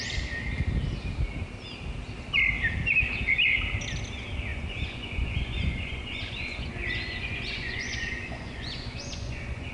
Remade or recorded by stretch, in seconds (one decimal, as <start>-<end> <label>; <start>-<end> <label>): 0.0-4.5 recorded; 4.5-9.7 remade